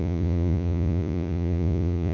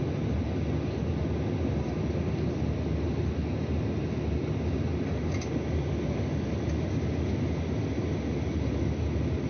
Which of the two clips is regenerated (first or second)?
first